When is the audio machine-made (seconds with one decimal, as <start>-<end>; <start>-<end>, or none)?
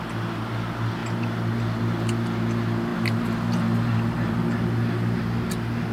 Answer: 2.9-5.2